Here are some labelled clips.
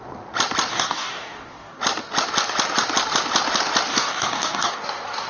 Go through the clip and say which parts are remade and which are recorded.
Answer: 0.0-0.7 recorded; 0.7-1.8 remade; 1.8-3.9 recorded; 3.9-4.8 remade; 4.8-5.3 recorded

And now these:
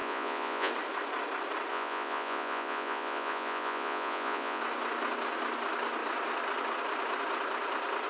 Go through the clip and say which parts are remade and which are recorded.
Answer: 0.0-0.7 remade; 0.7-1.7 recorded; 1.7-4.6 remade; 4.6-8.1 recorded

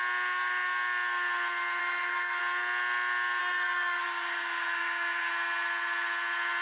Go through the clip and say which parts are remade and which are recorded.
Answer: 0.0-1.8 recorded; 1.8-2.4 remade; 2.4-3.4 recorded; 3.4-5.3 remade; 5.3-6.6 recorded

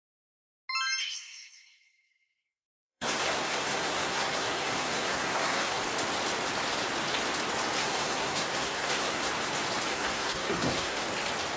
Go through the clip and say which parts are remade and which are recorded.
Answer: 0.0-1.0 recorded; 1.0-5.8 remade; 5.8-7.8 recorded; 7.8-9.3 remade; 9.3-9.9 recorded; 9.9-11.0 remade; 11.0-11.6 recorded

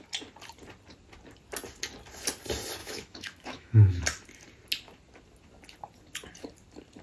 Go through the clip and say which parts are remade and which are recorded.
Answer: 0.0-2.8 recorded; 2.8-4.0 remade; 4.0-7.0 recorded